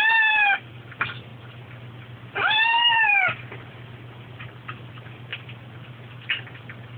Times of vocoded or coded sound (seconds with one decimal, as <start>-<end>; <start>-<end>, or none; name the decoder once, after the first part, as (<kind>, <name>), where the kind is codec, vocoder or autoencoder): none